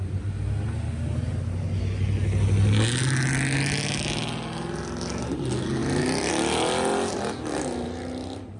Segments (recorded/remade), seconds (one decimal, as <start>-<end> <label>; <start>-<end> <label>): 0.0-8.6 recorded